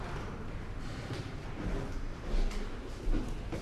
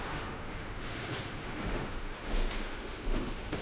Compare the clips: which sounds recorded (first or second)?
first